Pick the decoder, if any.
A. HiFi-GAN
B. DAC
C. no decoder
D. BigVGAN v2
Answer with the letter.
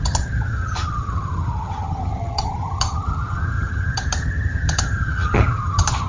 A